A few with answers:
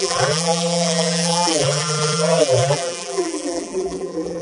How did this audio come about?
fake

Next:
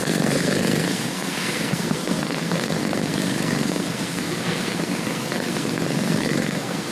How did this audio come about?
fake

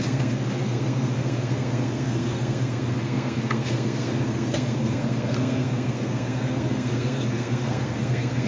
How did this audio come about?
fake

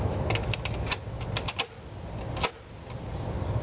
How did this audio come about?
real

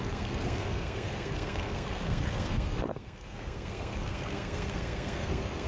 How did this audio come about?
fake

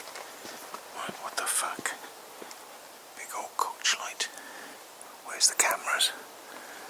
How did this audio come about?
real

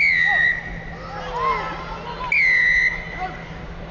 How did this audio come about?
real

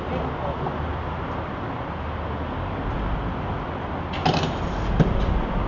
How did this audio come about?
real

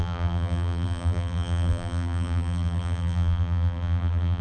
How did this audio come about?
fake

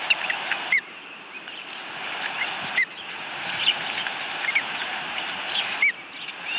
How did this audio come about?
fake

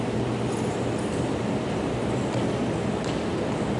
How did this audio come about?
real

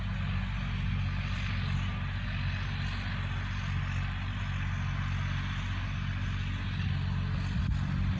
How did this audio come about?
real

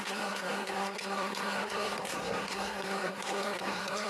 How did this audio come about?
fake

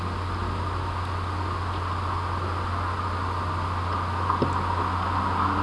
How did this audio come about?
real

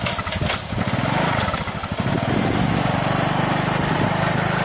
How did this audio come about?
real